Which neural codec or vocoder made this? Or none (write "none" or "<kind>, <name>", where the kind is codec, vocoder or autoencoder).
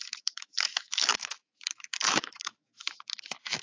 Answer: autoencoder, DAC-VAE